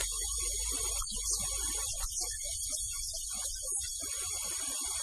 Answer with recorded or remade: remade